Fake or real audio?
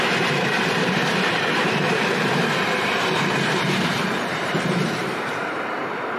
fake